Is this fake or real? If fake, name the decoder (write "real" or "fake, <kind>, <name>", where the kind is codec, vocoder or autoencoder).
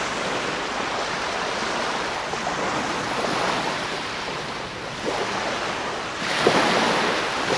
real